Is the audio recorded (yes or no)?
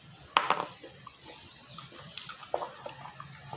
yes